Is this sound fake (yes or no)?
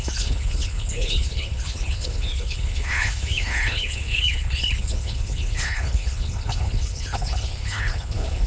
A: yes